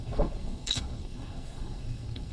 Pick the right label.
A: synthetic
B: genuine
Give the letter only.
A